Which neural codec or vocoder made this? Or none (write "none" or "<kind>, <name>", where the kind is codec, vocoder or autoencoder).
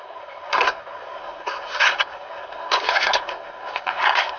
codec, SNAC